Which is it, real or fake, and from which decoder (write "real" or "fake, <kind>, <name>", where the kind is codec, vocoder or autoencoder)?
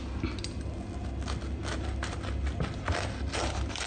real